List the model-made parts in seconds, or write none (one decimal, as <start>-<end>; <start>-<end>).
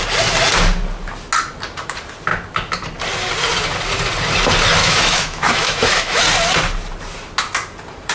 4.8-6.2